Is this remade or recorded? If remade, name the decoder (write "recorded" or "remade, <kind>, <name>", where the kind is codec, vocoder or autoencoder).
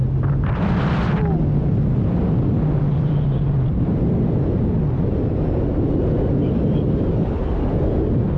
recorded